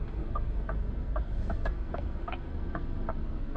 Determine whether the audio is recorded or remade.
remade